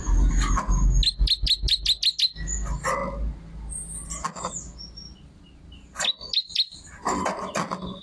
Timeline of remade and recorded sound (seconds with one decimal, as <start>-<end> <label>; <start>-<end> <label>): 0.0-8.0 recorded